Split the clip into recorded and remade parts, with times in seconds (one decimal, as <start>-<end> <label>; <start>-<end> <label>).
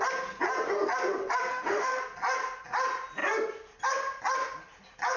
0.0-1.5 recorded; 1.5-2.0 remade; 2.0-5.2 recorded